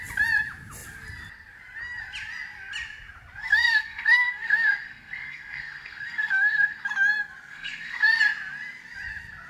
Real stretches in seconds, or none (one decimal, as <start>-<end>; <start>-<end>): 0.0-3.4; 6.8-7.5; 8.2-9.5